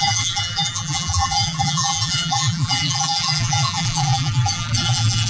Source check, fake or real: fake